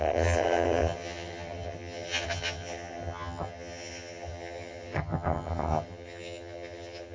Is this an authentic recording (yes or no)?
no